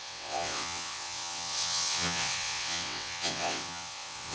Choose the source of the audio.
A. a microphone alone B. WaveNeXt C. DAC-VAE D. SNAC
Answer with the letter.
B